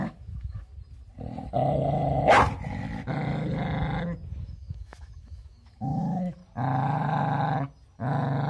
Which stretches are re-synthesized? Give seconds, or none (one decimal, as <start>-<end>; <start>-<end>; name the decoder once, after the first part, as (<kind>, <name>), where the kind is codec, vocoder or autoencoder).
0.0-0.7 (autoencoder, DAC-VAE); 4.4-6.4